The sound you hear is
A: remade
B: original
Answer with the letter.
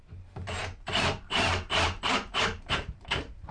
A